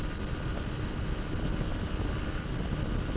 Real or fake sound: real